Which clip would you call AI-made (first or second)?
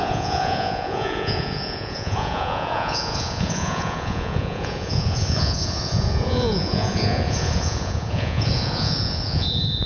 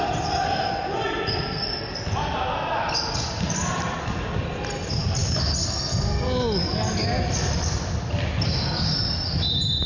first